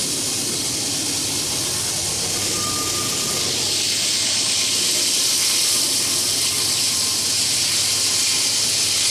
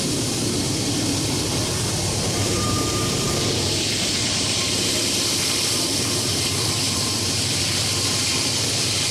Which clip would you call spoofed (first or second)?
second